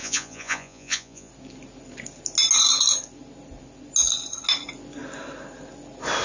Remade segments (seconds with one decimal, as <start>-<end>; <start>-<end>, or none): 0.0-1.3